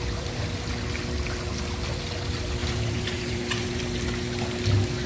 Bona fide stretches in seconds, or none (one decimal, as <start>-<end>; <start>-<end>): 0.0-2.6; 3.8-5.1

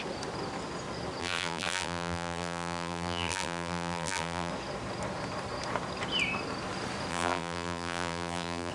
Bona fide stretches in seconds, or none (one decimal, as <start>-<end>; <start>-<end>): 0.0-1.2; 4.5-7.1

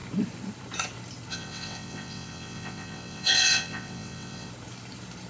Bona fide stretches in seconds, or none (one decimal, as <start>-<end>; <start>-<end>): 0.0-1.3; 4.5-5.3

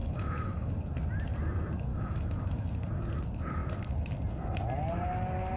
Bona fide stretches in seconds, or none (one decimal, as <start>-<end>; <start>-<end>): 0.8-1.9; 2.7-5.6